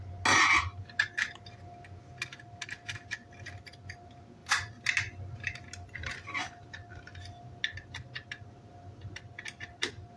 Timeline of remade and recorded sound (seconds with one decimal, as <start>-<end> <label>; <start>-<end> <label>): 0.0-10.2 recorded